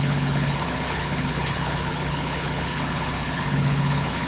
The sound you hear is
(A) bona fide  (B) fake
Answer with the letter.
B